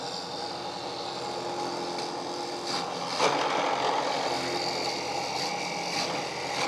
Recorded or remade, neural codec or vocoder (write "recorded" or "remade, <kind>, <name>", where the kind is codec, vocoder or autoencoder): recorded